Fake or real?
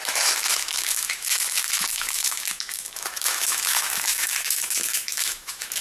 fake